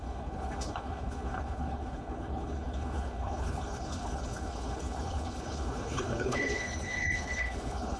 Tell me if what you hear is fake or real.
fake